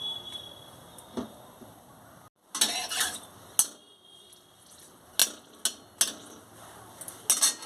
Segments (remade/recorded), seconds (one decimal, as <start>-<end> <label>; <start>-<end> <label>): 0.0-7.7 recorded